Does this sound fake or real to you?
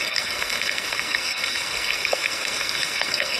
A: fake